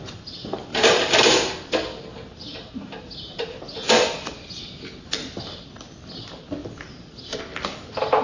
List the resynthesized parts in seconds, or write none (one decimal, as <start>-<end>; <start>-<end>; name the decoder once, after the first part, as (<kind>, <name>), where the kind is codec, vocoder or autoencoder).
0.7-1.5 (vocoder, BigVGAN v2); 2.3-3.6; 5.2-5.7; 6.6-7.4